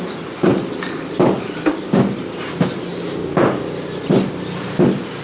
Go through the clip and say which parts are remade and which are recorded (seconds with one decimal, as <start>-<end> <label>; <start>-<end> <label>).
0.0-2.9 recorded; 2.9-3.4 remade; 3.4-5.2 recorded